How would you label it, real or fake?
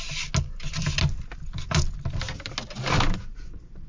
real